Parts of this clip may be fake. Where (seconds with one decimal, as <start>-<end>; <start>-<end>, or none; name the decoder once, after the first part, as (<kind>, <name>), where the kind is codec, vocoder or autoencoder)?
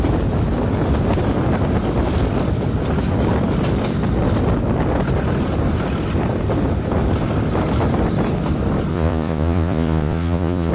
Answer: 8.9-10.7 (vocoder, Vocos)